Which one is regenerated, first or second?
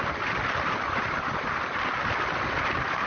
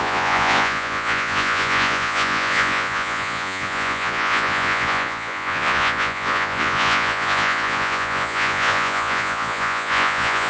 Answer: second